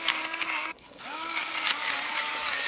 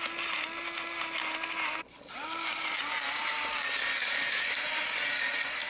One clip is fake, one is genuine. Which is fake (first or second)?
first